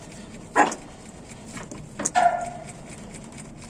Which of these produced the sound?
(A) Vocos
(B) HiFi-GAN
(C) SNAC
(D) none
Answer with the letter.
D